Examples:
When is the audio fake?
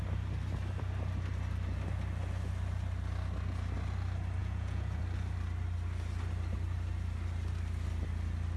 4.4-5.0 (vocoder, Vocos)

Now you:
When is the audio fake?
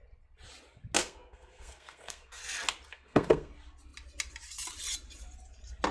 1.0-2.4 (codec, SNAC); 2.9-3.5